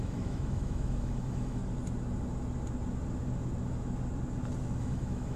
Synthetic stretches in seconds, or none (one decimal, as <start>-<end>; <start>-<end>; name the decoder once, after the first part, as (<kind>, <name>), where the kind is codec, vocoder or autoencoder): 0.0-1.6 (autoencoder, DAC-VAE); 4.8-5.4